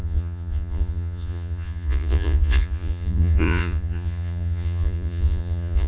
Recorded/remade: remade